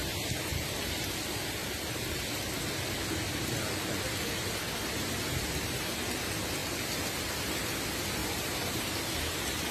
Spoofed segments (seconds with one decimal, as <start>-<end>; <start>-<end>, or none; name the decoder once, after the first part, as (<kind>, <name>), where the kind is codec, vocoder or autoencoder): 0.0-0.8 (vocoder, BigVGAN v2); 8.2-9.7